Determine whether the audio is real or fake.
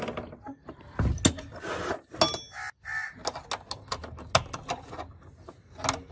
real